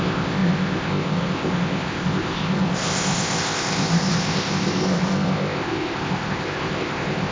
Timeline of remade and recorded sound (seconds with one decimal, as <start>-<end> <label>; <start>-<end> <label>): 0.0-7.3 remade